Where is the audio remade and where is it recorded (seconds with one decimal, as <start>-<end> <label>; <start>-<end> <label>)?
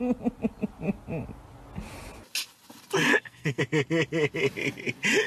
0.0-3.1 recorded; 3.1-3.6 remade; 3.6-5.3 recorded